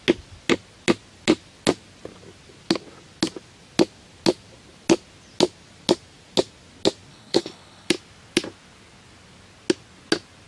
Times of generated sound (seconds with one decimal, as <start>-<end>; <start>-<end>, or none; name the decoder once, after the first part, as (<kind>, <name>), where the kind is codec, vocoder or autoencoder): 7.1-7.9 (codec, HILCodec)

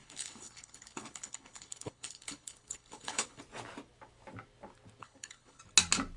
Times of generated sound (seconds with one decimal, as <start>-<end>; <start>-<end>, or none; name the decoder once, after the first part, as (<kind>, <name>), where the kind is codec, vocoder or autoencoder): 0.0-3.4 (codec, HILCodec); 5.0-5.6

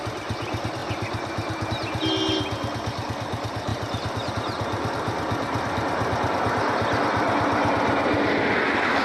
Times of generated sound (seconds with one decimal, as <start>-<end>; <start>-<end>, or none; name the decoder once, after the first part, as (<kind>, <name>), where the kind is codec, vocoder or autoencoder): none

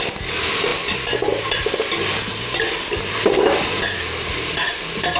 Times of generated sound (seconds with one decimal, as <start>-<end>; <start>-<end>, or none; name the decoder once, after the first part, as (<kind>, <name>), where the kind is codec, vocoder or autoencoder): none